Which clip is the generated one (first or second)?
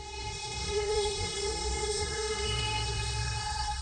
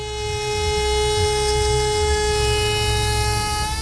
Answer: first